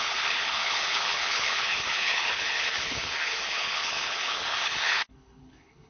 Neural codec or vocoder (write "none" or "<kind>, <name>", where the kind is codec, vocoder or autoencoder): codec, HILCodec